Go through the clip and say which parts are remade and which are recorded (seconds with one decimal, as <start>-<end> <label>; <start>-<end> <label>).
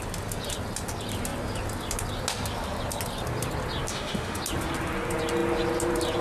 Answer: 0.0-3.9 recorded; 3.9-4.4 remade; 4.4-6.2 recorded